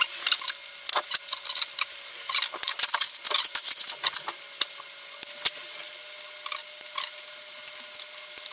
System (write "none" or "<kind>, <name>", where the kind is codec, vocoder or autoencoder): none